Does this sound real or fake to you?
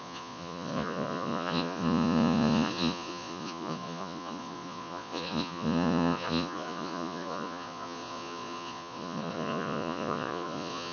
fake